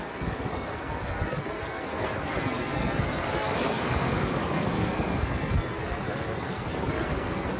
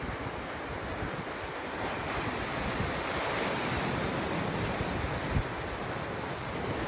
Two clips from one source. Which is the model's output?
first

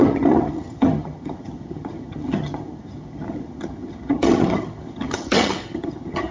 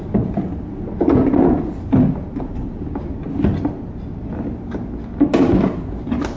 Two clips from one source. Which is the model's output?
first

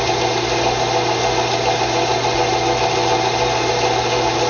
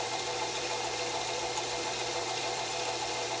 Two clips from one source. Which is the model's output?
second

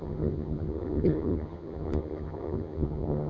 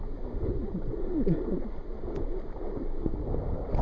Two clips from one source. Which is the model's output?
first